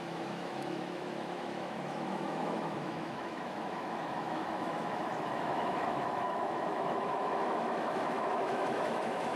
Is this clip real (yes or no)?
no